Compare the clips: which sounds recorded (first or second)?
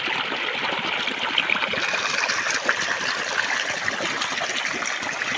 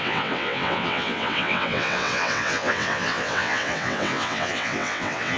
first